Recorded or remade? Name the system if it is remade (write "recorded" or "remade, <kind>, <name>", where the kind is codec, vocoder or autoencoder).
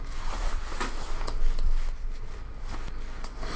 recorded